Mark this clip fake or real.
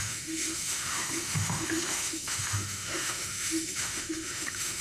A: fake